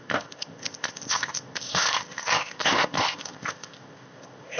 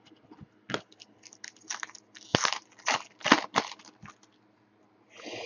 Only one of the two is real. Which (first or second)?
second